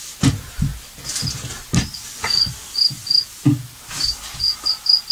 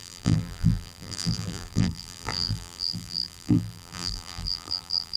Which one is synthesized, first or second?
second